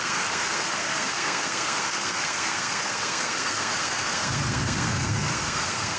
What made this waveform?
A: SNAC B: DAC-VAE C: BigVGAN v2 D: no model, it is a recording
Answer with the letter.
A